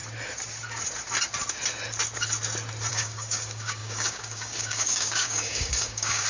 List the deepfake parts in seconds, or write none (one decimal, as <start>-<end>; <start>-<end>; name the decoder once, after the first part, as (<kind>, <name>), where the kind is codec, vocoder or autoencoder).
2.9-6.3 (codec, DAC)

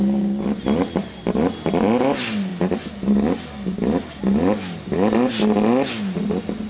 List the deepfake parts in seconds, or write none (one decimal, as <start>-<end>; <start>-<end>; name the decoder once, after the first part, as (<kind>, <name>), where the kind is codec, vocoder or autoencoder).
none

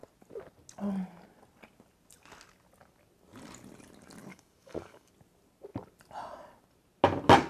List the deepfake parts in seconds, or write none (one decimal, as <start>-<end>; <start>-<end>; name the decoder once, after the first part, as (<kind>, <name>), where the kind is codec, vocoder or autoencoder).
4.3-5.1 (codec, DAC)

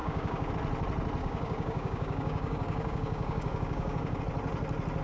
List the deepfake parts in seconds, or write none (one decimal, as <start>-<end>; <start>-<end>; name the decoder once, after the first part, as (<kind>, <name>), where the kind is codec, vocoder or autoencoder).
0.0-0.5 (codec, DAC); 1.2-4.2

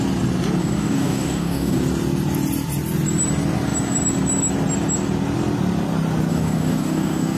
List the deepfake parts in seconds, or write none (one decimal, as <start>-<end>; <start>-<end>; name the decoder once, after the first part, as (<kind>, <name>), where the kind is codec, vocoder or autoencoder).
0.6-1.8 (codec, DAC); 6.3-7.4

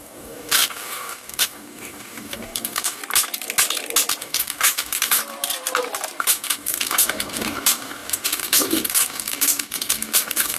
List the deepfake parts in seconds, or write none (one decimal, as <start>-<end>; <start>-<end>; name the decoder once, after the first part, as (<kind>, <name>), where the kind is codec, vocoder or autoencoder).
0.0-3.0 (codec, DAC); 4.2-5.2; 6.2-10.6